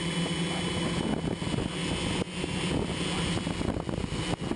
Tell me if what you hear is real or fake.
real